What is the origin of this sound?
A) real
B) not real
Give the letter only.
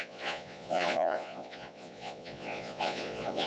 B